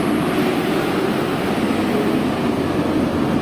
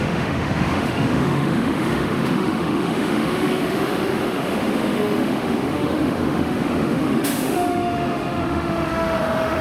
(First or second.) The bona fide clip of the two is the first